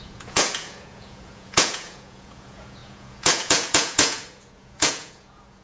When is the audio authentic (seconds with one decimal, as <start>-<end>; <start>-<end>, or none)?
none